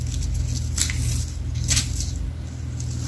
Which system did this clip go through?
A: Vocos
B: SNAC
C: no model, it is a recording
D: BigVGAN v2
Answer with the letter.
C